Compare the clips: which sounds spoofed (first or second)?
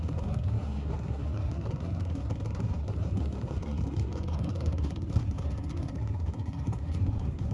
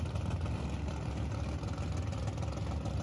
first